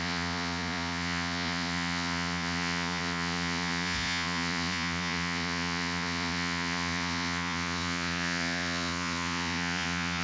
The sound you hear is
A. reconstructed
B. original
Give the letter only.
A